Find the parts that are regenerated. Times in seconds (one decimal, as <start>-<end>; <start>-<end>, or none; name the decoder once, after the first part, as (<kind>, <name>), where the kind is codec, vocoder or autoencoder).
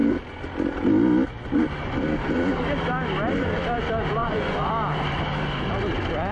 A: 4.2-4.7 (vocoder, Vocos)